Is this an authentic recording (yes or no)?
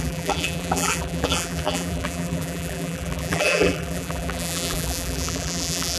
no